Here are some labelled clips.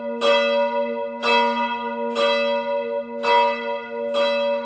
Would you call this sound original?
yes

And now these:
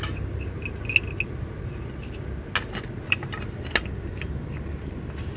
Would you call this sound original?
yes